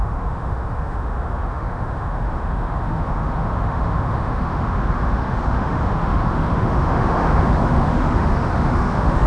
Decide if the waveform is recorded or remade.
remade